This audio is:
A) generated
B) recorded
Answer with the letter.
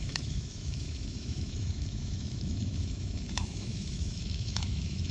A